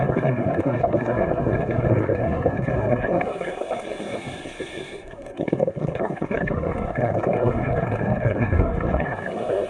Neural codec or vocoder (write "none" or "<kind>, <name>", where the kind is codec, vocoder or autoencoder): codec, SNAC